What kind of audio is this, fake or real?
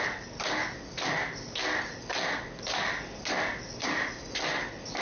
real